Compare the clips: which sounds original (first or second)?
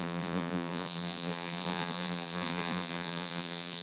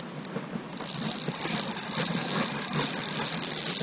second